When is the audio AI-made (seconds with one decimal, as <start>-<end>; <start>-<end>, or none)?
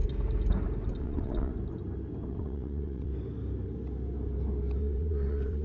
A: 1.0-1.5; 2.3-3.1; 4.8-5.6